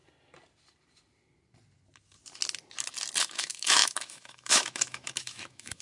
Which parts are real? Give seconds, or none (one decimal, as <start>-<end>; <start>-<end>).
0.0-3.2